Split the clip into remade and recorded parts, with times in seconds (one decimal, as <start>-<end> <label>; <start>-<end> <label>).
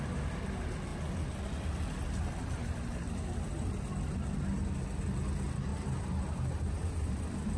0.0-0.9 recorded; 0.9-4.4 remade; 4.4-5.7 recorded; 5.7-7.1 remade; 7.1-7.6 recorded